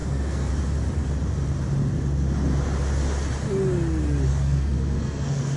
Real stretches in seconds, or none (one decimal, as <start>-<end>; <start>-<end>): 0.5-4.3